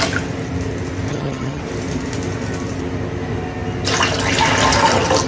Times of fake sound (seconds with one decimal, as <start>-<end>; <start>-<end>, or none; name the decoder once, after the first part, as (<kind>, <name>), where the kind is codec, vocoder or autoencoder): 1.1-1.6 (vocoder, HiFi-GAN)